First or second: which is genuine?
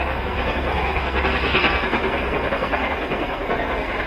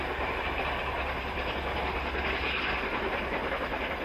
second